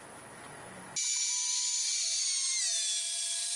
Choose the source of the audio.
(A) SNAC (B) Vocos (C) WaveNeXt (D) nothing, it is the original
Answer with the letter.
D